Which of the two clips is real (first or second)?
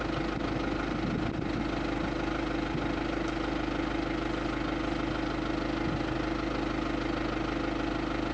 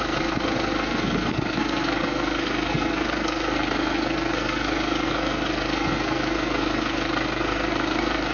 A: first